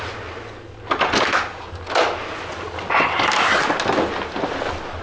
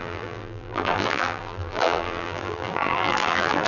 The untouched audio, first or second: first